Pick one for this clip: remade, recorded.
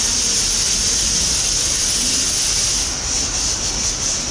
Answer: recorded